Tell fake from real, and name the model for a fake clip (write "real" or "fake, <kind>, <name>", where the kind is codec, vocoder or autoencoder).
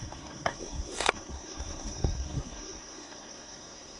fake, codec, SNAC